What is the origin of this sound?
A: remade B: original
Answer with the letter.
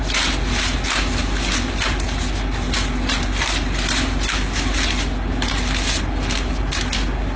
B